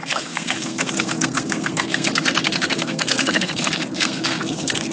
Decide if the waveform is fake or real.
fake